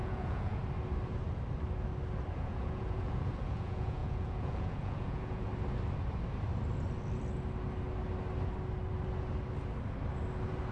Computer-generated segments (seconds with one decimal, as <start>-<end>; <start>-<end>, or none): 0.0-0.6; 2.3-5.5